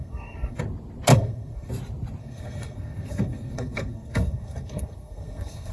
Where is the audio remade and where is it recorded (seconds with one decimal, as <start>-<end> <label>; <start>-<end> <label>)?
0.0-0.6 remade; 0.6-1.1 recorded; 1.1-1.7 remade; 1.7-2.2 recorded; 2.2-5.7 remade